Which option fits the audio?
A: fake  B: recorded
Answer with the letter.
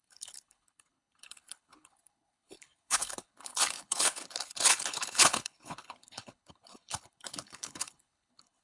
A